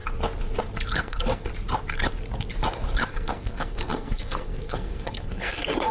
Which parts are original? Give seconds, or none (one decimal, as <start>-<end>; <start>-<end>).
0.0-1.0; 1.5-3.1